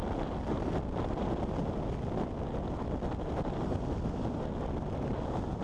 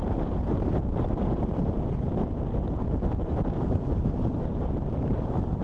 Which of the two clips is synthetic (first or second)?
second